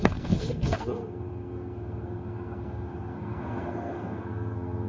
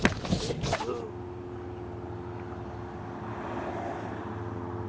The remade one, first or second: first